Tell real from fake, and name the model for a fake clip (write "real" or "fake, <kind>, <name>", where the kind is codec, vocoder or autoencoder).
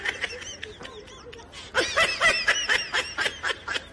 real